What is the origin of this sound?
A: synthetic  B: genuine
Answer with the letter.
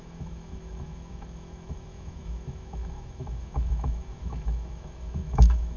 A